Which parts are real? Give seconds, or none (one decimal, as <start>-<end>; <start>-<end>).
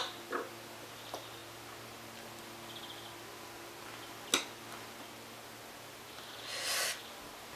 0.0-7.6